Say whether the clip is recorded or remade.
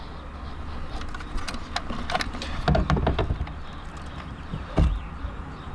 recorded